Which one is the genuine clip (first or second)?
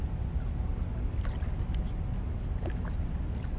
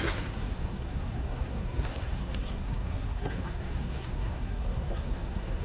first